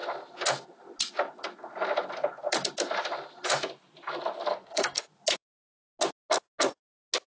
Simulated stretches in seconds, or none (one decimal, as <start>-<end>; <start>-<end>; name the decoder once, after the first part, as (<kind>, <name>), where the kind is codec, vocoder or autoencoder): 4.5-5.0 (codec, SNAC)